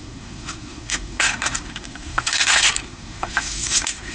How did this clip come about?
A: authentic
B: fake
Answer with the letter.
B